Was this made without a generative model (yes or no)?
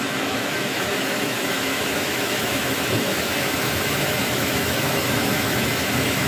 no